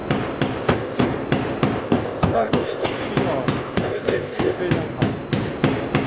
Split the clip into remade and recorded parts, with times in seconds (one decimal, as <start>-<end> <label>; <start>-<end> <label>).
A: 0.0-0.6 recorded; 0.6-1.1 remade; 1.1-1.8 recorded; 1.8-3.0 remade; 3.0-3.6 recorded; 3.6-4.6 remade; 4.6-6.1 recorded